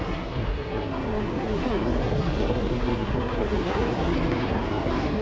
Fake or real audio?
fake